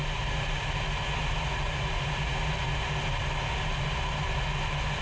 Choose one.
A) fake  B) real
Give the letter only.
B